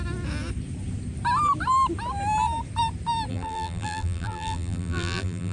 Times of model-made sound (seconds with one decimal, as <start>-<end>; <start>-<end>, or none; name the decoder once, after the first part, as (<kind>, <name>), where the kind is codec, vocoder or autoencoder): 3.3-5.5 (vocoder, BigVGAN v2)